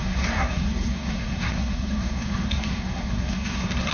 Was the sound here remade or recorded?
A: remade